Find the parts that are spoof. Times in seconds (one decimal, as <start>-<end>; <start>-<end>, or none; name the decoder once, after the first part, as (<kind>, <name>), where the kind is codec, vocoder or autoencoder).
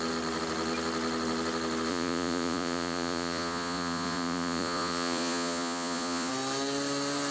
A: 1.9-6.3 (vocoder, Vocos)